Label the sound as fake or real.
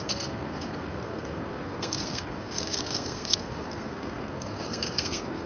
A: fake